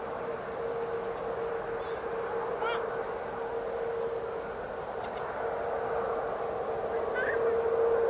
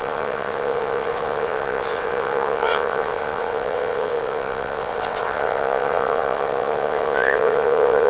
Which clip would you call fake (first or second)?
second